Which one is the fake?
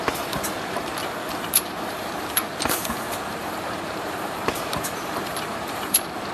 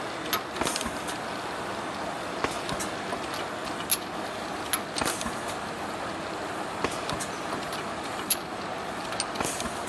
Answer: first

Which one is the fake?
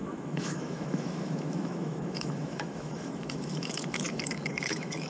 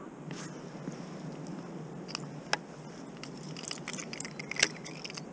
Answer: first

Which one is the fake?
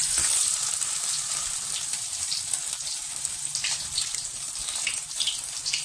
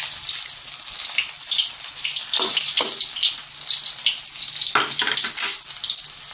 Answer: first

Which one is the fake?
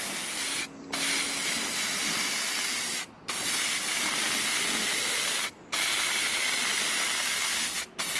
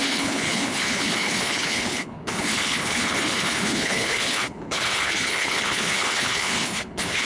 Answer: second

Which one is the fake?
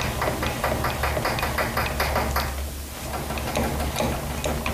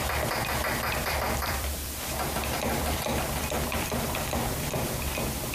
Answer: second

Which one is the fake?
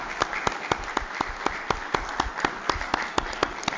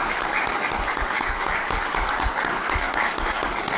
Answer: second